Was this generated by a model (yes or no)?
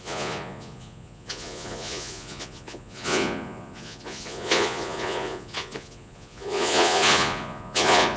yes